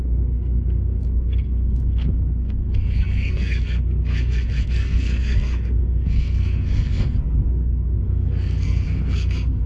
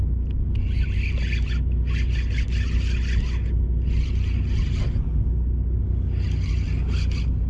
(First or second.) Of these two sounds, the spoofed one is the first